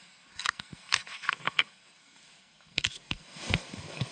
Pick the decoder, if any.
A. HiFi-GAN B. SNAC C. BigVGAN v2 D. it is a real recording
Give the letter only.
B